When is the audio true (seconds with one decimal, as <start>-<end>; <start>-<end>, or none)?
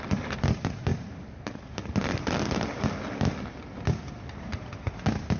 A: 0.0-5.4